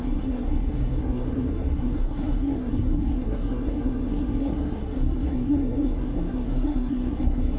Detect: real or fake fake